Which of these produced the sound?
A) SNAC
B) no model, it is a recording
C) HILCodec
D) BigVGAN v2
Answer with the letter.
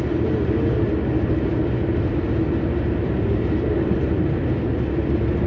B